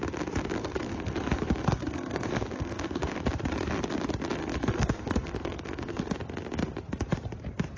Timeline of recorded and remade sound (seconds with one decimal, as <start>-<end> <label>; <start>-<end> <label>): 0.0-0.6 recorded; 0.6-3.2 remade; 3.2-4.4 recorded; 4.4-6.1 remade; 6.1-7.8 recorded

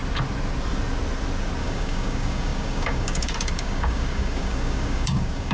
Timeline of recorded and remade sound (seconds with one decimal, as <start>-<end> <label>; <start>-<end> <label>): 0.0-1.6 recorded; 1.6-5.5 remade